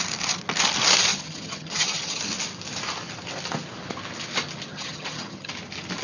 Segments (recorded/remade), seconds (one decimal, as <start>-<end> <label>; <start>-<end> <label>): 0.0-1.1 recorded; 1.1-2.2 remade; 2.2-4.7 recorded; 4.7-5.5 remade; 5.5-6.0 recorded